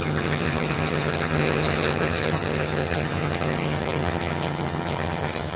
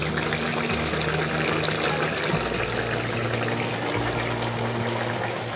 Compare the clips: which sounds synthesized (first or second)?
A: first